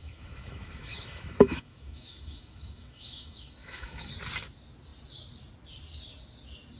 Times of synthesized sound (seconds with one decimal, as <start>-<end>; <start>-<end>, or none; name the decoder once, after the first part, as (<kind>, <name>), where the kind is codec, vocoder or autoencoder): 0.0-4.1 (autoencoder, DAC-VAE)